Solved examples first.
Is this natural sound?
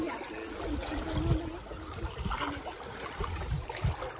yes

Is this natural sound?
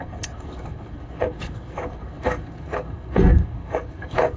no